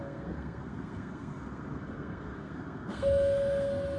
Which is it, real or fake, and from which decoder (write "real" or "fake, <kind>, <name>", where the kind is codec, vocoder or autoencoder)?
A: fake, codec, SNAC